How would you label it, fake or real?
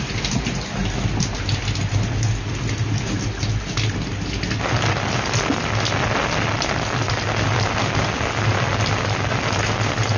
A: real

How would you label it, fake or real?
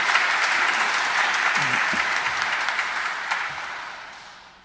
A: real